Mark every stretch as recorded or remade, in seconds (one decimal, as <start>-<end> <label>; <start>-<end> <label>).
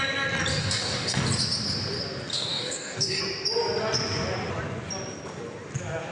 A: 0.0-0.6 recorded; 0.6-1.3 remade; 1.3-2.3 recorded; 2.3-3.2 remade; 3.2-6.1 recorded